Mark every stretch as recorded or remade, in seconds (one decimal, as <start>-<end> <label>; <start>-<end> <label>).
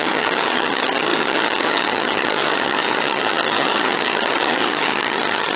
0.0-5.6 remade